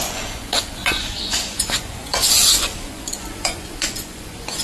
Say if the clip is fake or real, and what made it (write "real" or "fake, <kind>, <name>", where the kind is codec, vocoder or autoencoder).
fake, vocoder, Vocos